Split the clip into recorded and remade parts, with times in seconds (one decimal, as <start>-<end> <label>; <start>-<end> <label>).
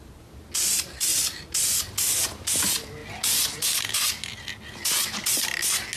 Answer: 0.0-6.0 recorded